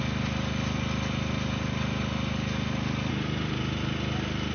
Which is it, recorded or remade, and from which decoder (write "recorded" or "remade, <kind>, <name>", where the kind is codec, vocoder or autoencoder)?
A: recorded